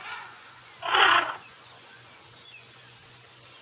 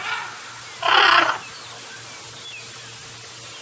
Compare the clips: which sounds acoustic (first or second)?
second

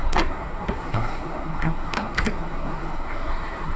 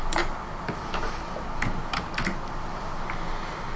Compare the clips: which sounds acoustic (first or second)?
second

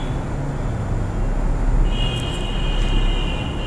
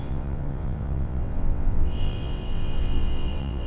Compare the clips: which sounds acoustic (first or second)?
first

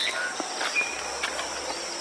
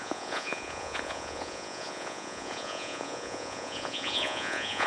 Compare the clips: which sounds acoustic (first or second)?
first